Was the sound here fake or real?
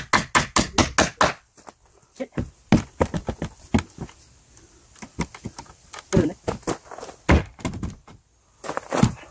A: real